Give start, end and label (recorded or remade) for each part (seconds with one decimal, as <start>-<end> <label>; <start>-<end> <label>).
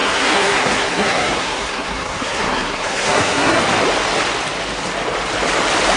0.0-3.6 remade; 3.6-6.0 recorded